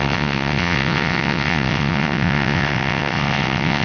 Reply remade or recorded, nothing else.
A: remade